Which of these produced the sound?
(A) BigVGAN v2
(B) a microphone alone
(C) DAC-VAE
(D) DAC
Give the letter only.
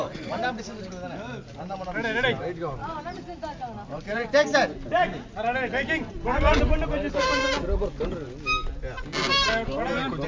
B